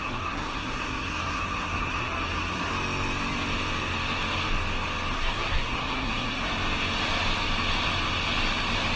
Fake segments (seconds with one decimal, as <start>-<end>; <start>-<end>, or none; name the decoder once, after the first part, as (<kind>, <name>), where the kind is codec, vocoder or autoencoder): 0.0-2.7 (codec, SNAC); 5.1-6.4